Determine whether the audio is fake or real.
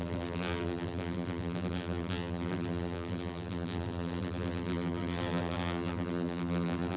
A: fake